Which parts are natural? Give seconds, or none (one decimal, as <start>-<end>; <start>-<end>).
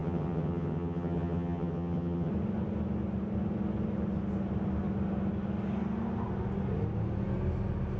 2.3-8.0